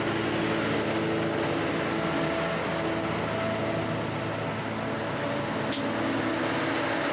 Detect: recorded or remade recorded